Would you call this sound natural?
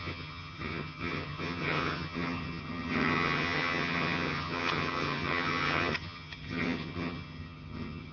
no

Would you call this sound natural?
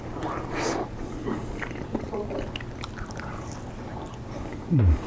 yes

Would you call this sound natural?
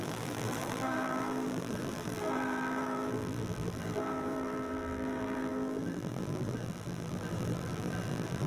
no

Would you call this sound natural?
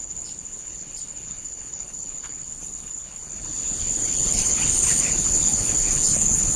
no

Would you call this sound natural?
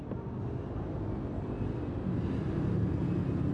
yes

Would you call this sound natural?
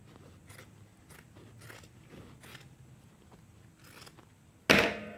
yes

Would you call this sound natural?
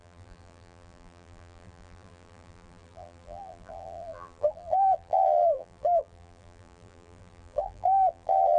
no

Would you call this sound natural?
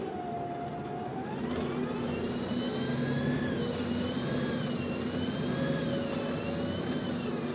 yes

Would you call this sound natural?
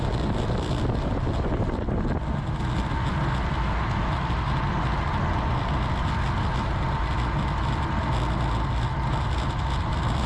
yes